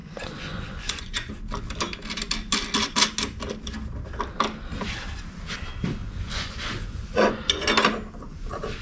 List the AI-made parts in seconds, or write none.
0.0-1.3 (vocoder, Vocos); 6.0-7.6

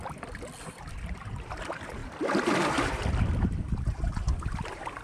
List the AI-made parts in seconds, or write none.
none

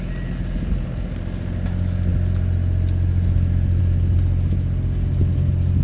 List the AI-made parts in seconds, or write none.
none

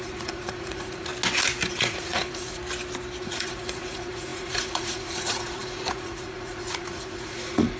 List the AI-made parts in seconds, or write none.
0.0-1.1 (vocoder, Vocos); 1.7-2.6; 3.2-7.8

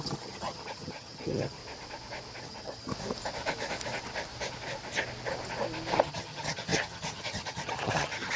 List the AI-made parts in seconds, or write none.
0.0-1.6 (vocoder, HiFi-GAN); 2.4-2.9; 6.0-8.4

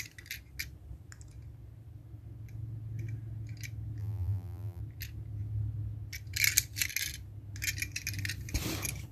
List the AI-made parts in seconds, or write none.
4.0-4.8 (vocoder, BigVGAN v2)

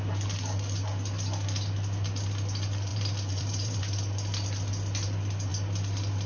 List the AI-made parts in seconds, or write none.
2.9-3.8 (vocoder, BigVGAN v2)

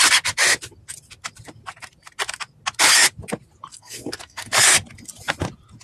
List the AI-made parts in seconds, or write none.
3.7-4.6 (codec, SNAC)